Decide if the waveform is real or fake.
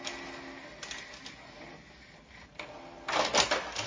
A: real